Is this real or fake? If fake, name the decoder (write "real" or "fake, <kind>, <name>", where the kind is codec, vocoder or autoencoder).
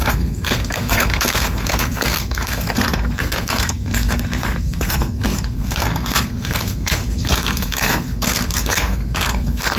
fake, codec, SNAC